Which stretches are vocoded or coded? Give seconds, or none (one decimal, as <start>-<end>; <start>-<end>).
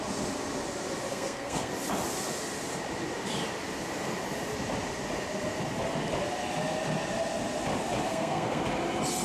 1.1-1.7; 8.1-8.6